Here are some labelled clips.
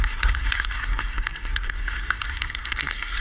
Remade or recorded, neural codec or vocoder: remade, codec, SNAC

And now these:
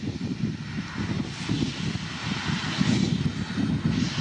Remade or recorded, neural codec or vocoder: recorded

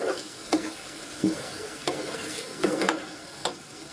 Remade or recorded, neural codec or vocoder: remade, codec, SNAC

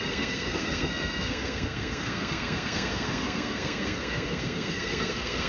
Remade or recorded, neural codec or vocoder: remade, codec, SNAC